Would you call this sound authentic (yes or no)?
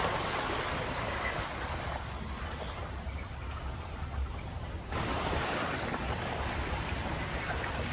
yes